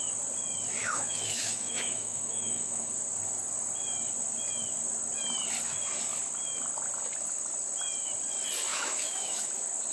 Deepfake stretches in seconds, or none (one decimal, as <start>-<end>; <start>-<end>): 0.8-2.9; 8.7-9.5